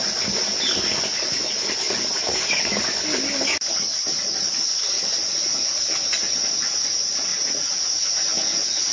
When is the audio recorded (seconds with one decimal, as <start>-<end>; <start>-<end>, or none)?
0.0-7.3; 7.9-8.9